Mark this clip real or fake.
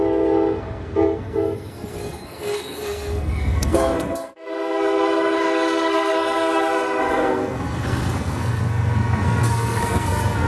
fake